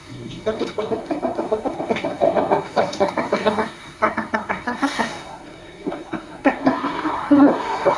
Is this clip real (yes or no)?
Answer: no